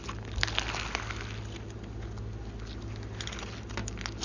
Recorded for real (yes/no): yes